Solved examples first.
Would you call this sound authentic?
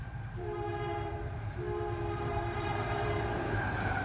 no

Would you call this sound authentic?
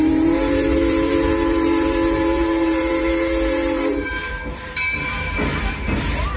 no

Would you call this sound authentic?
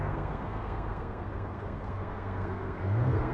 no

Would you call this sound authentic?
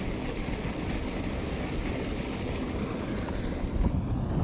yes